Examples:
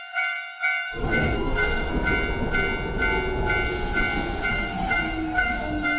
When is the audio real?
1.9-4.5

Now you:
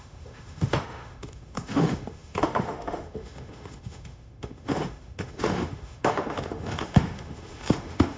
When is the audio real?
none

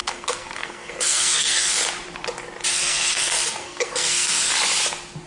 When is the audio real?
1.8-2.7; 4.5-5.3

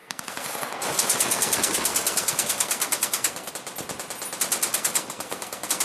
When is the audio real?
3.5-4.7